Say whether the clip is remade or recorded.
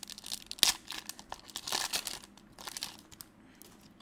recorded